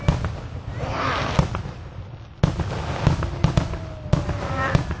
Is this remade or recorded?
recorded